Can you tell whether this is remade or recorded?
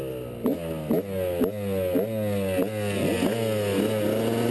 recorded